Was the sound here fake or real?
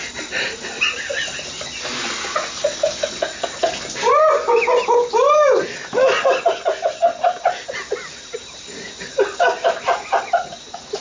real